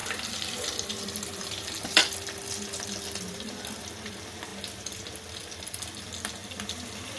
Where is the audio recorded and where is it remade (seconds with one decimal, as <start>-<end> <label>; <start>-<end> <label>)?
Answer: 0.0-3.9 remade; 3.9-4.5 recorded; 4.5-5.0 remade; 5.0-5.4 recorded; 5.4-6.0 remade; 6.0-7.2 recorded